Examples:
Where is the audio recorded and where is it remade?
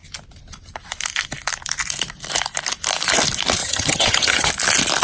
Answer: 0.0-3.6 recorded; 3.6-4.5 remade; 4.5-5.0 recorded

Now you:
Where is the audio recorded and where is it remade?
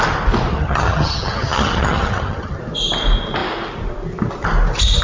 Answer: 0.0-0.5 recorded; 0.5-2.6 remade; 2.6-5.0 recorded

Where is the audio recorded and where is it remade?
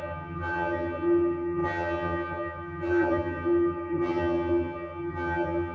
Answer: 0.0-5.7 remade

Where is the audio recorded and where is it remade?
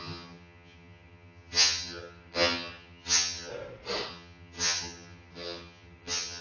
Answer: 0.0-3.5 remade; 3.5-4.1 recorded; 4.1-6.4 remade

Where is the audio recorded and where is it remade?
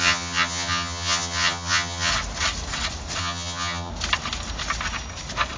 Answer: 0.0-2.1 remade; 2.1-3.2 recorded; 3.2-3.9 remade; 3.9-5.6 recorded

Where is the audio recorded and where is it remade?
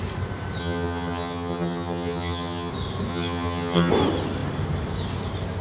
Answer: 0.0-0.6 recorded; 0.6-2.7 remade; 2.7-3.1 recorded; 3.1-3.9 remade; 3.9-5.6 recorded